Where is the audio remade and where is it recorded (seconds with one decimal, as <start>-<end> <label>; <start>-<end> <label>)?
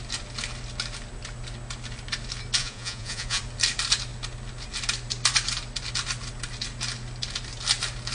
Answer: 0.0-2.6 recorded; 2.6-3.4 remade; 3.4-8.1 recorded